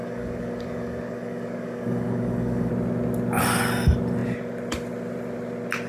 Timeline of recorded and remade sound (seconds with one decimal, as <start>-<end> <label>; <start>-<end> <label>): 0.0-2.7 remade; 2.7-5.9 recorded